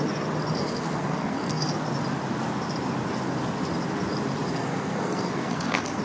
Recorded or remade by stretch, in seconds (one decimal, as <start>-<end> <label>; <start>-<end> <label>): 0.0-0.6 recorded; 0.6-1.6 remade; 1.6-4.5 recorded; 4.5-6.0 remade